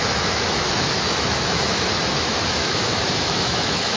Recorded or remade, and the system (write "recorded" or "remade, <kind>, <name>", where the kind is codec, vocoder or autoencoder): remade, autoencoder, DAC-VAE